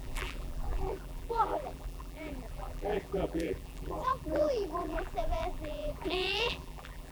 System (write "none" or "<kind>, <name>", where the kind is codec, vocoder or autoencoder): vocoder, BigVGAN v2